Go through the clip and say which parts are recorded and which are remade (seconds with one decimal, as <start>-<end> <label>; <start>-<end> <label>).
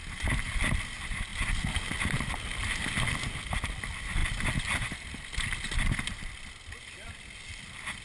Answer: 0.0-8.0 recorded